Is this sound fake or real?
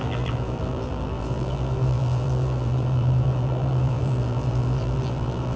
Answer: fake